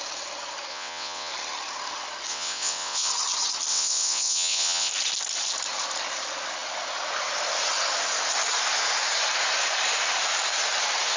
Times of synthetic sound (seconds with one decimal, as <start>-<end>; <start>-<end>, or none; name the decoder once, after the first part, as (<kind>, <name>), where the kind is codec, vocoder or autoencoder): 0.7-1.3 (vocoder, WaveNeXt); 2.3-3.1; 3.7-4.9